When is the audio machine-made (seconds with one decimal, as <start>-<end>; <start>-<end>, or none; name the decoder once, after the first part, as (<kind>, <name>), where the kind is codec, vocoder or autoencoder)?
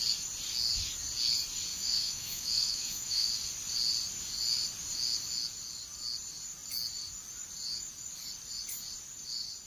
1.7-3.3 (autoencoder, DAC-VAE)